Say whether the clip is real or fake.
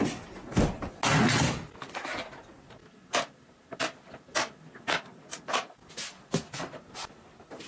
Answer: real